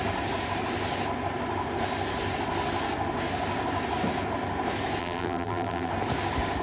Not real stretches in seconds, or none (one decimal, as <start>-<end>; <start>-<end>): 5.0-5.9